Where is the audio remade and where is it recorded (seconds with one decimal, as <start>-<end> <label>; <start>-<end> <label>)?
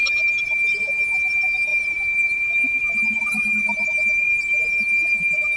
0.0-0.8 remade; 0.8-1.7 recorded; 1.7-2.8 remade; 2.8-5.6 recorded